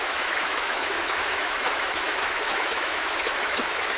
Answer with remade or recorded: remade